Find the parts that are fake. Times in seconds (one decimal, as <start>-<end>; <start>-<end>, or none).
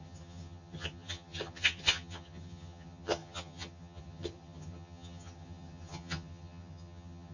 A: 0.0-7.3